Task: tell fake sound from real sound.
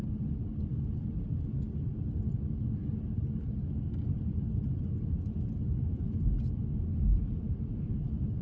real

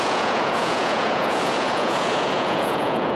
fake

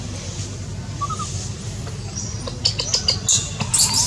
real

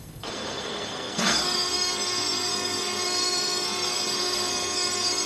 fake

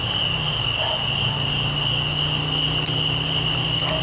real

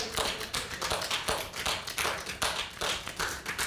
fake